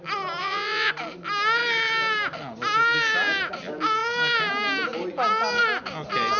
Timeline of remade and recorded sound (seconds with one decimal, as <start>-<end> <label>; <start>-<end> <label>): 0.0-0.4 recorded; 0.4-0.9 remade; 0.9-6.4 recorded